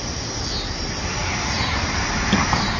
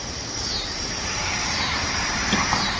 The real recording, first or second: first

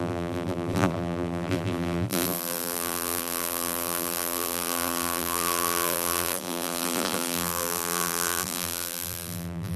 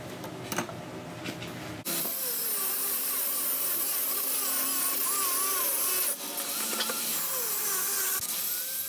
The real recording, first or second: second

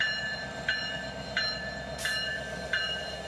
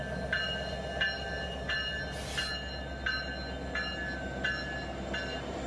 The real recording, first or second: second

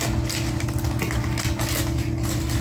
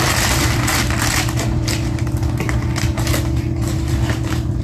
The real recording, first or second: first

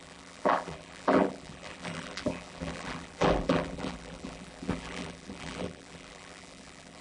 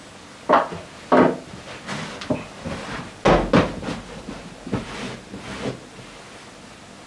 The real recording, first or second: second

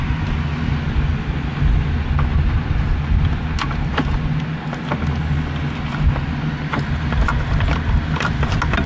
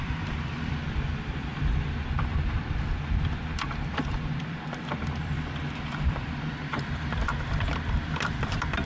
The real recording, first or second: first